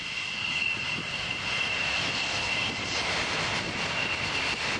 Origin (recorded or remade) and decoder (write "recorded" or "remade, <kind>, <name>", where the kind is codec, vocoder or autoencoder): recorded